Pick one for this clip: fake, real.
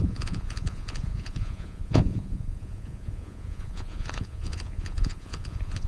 fake